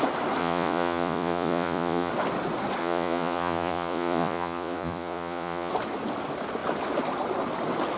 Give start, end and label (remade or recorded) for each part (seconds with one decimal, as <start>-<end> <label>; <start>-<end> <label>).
0.0-0.4 recorded; 0.4-2.1 remade; 2.1-2.8 recorded; 2.8-5.7 remade; 5.7-8.0 recorded